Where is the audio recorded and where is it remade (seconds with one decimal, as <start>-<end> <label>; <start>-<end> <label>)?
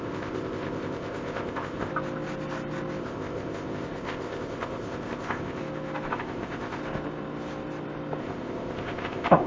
0.0-1.9 remade; 1.9-3.0 recorded; 3.0-5.6 remade; 5.6-6.1 recorded; 6.1-6.8 remade; 6.8-8.2 recorded; 8.2-9.5 remade